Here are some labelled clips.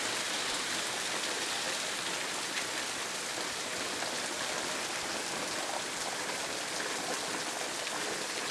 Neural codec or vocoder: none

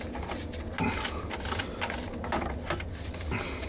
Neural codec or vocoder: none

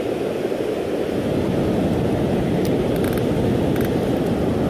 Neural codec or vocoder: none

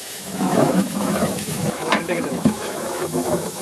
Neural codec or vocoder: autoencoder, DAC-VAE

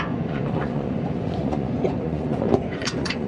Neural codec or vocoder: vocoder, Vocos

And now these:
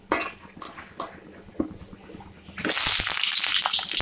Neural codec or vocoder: none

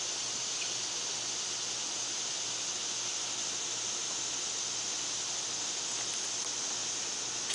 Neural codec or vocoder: none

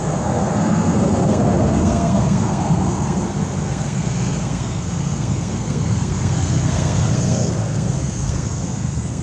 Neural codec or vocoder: codec, SNAC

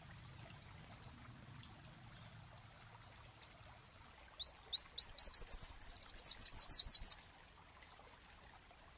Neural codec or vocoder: none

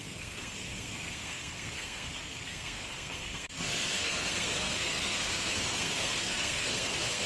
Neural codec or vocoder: codec, SNAC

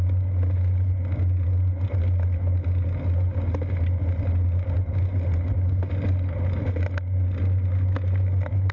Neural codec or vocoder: none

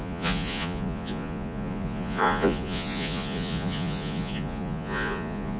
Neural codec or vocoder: vocoder, Vocos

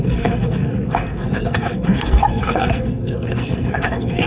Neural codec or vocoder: codec, SNAC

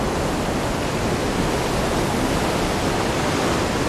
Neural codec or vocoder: none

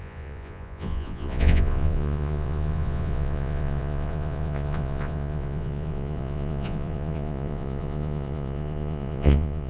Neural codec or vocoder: vocoder, Vocos